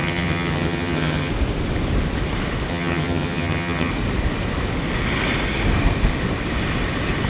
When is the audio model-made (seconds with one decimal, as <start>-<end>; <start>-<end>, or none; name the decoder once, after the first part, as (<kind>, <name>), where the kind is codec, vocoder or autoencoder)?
0.0-1.3 (vocoder, HiFi-GAN); 2.7-3.9

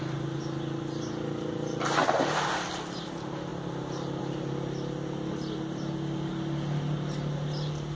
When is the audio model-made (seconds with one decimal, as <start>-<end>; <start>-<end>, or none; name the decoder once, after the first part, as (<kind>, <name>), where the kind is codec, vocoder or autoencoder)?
none